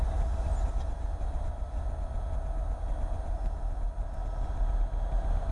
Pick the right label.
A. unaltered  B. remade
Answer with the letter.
A